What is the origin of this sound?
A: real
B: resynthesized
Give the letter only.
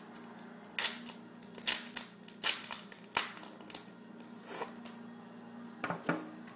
A